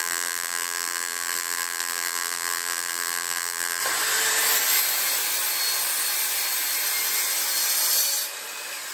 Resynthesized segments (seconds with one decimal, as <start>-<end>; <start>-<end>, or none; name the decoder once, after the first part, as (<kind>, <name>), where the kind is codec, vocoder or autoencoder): 0.0-3.8 (vocoder, BigVGAN v2)